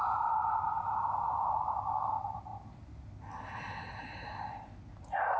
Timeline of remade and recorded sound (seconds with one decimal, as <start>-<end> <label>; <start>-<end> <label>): 0.0-5.4 recorded